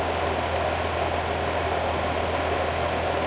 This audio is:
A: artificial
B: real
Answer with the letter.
B